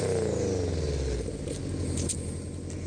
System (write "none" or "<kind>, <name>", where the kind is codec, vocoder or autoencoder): none